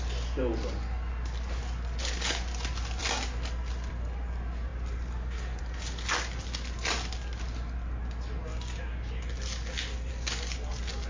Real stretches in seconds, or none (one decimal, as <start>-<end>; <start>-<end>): 0.0-11.1